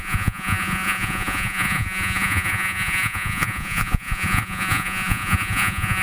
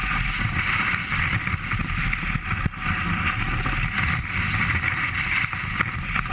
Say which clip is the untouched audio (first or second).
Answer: second